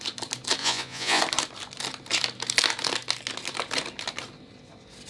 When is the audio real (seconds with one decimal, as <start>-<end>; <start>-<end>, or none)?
0.0-0.6; 1.2-5.1